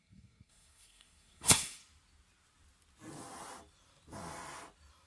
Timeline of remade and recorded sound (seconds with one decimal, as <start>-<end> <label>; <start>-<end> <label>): 0.0-1.8 remade; 1.8-5.1 recorded